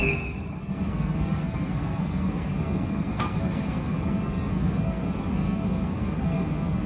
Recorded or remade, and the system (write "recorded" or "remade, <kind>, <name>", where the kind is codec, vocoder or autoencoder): remade, codec, SNAC